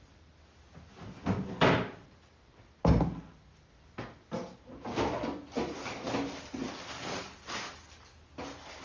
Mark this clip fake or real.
real